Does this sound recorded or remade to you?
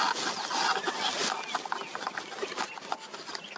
recorded